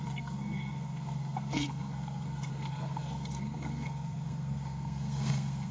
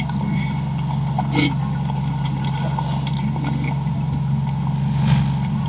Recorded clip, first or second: second